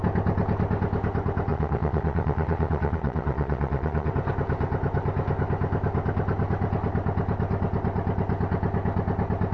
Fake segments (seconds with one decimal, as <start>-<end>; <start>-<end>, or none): 1.5-4.1

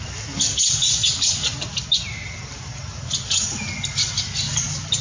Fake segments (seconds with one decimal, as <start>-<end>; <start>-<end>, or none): none